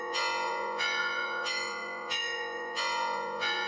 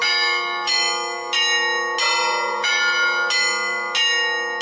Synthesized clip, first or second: first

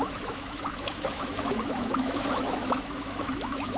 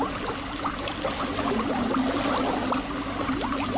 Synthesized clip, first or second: first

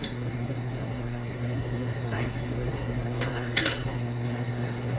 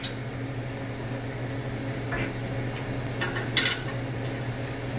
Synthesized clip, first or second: first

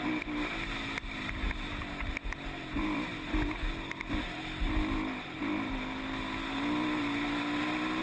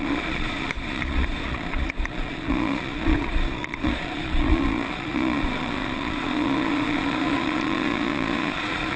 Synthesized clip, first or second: second